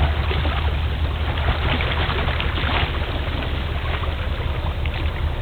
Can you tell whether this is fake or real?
real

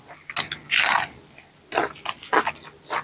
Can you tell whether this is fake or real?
real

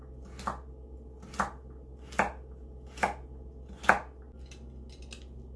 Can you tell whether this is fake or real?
real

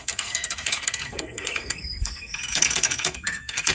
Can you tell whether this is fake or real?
fake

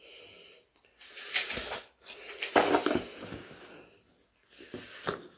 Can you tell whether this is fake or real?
real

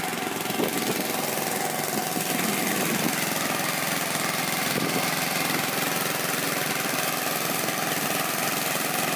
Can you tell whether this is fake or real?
real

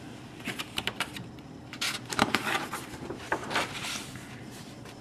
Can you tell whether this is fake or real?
fake